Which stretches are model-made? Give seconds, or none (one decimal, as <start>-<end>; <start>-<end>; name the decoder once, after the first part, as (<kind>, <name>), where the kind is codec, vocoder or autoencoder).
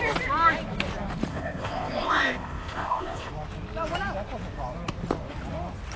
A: 1.3-3.3 (codec, ZipCodec)